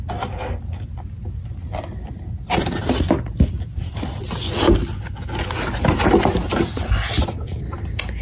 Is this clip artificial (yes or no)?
no